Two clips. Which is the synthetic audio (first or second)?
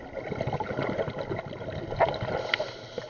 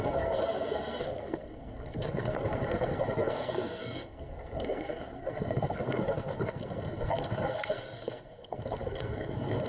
second